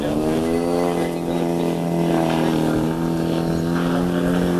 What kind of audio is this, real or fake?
real